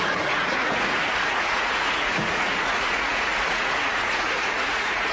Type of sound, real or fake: fake